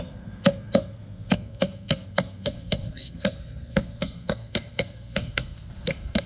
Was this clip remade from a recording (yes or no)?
yes